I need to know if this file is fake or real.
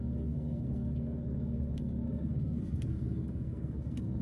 fake